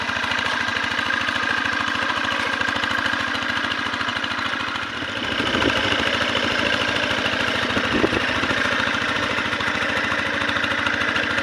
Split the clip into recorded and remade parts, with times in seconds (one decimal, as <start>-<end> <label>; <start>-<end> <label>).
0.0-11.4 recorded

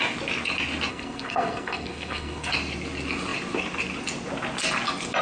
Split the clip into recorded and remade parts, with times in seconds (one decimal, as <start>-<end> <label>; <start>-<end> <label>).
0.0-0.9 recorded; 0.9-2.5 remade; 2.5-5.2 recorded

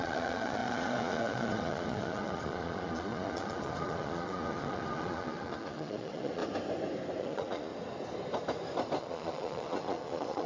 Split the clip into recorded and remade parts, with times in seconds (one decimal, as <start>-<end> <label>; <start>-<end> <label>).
0.0-6.4 remade; 6.4-7.2 recorded; 7.2-7.7 remade; 7.7-9.0 recorded; 9.0-10.5 remade

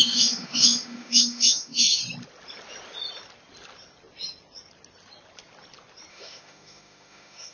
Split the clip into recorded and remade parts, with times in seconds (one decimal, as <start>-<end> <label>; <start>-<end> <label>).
0.0-2.0 remade; 2.0-6.1 recorded; 6.1-7.5 remade

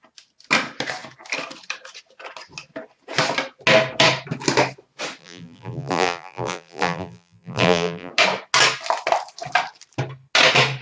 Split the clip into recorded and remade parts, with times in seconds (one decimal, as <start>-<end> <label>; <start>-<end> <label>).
0.0-5.2 recorded; 5.2-8.1 remade; 8.1-10.8 recorded

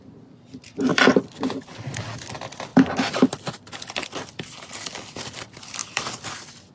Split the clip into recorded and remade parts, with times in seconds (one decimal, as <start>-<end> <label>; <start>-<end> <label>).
0.0-0.9 recorded; 0.9-2.3 remade; 2.3-2.7 recorded; 2.7-4.6 remade; 4.6-5.8 recorded; 5.8-6.7 remade